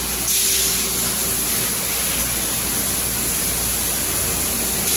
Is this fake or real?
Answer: real